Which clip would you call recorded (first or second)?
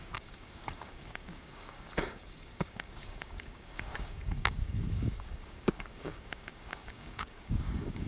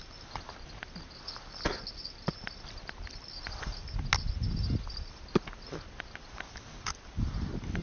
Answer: second